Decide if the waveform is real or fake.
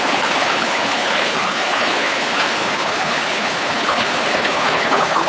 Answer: fake